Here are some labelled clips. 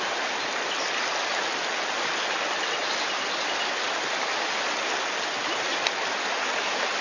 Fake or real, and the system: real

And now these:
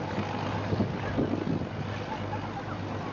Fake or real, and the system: real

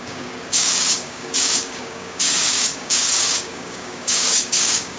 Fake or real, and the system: fake, codec, DAC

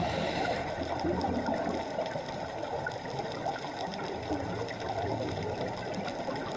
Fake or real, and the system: real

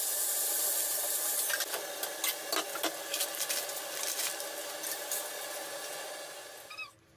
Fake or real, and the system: real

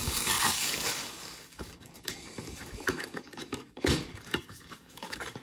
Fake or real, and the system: fake, codec, DAC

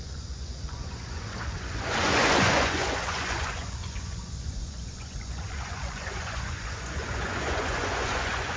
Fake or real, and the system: fake, vocoder, Vocos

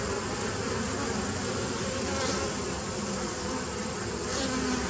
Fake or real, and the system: real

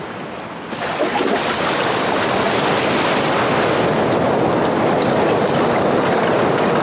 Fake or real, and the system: real